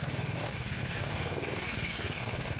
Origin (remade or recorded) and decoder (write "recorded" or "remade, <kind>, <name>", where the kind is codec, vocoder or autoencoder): remade, codec, DAC